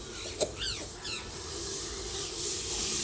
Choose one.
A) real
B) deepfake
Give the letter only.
A